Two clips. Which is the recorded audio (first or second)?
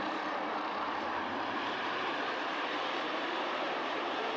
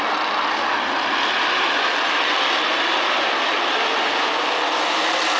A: second